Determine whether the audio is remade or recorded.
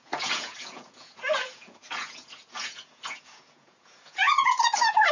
remade